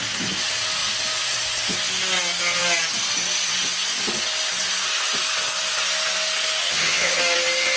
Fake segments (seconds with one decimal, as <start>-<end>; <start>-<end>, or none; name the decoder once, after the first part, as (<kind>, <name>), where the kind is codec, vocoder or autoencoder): 6.6-7.2 (vocoder, HiFi-GAN)

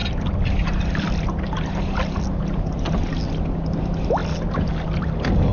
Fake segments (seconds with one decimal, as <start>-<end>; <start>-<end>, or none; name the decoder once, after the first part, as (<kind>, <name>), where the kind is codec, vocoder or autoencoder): none

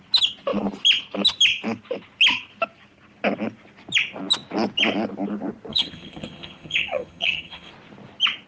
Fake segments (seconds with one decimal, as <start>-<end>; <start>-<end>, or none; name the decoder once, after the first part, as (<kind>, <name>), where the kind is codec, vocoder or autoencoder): 5.7-7.7 (vocoder, HiFi-GAN)

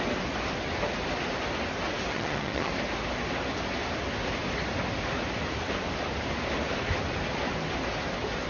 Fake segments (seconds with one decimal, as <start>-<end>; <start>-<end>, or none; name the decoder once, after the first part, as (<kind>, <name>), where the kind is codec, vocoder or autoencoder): 2.1-2.7 (vocoder, HiFi-GAN)

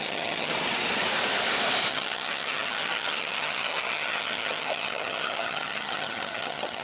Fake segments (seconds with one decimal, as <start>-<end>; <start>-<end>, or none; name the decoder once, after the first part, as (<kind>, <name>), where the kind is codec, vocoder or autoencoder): 0.0-0.5 (vocoder, HiFi-GAN); 1.9-6.8

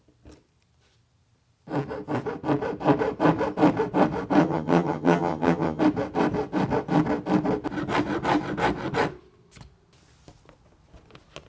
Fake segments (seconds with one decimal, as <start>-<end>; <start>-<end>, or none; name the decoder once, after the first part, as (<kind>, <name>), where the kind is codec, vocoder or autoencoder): 4.4-5.8 (vocoder, HiFi-GAN)

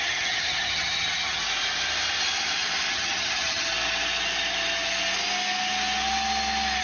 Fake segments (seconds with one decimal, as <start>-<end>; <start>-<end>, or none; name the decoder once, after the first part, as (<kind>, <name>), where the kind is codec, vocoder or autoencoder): 0.0-1.4 (vocoder, HiFi-GAN); 2.9-3.7